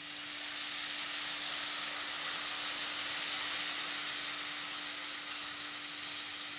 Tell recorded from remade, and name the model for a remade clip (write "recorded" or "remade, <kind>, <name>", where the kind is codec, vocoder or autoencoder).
recorded